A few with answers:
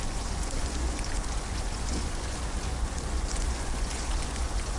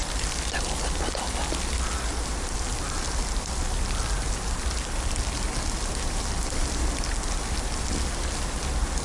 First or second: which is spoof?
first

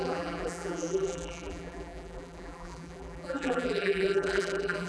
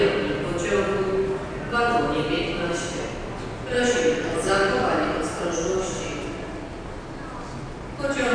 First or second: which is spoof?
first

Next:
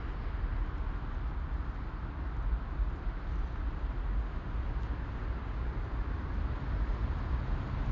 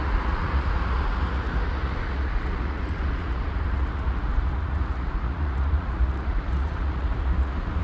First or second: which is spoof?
second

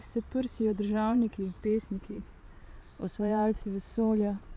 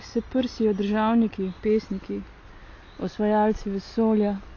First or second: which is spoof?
first